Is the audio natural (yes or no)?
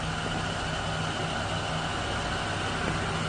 yes